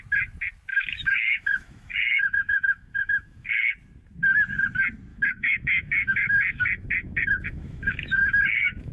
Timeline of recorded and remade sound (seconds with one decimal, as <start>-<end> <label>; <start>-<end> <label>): 0.0-0.7 recorded; 0.7-3.5 remade; 3.5-5.1 recorded; 5.1-8.9 remade